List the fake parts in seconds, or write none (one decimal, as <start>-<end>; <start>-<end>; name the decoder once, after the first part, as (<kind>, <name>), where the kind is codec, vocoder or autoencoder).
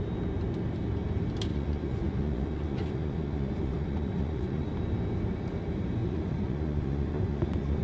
1.5-4.7 (vocoder, Vocos); 6.0-7.8